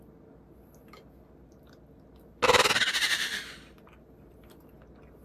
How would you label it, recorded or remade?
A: recorded